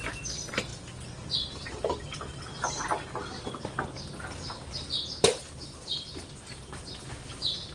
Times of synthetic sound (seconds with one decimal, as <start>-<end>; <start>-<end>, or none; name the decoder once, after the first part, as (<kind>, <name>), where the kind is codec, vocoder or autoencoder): none